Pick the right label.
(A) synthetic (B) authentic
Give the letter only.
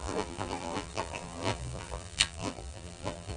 A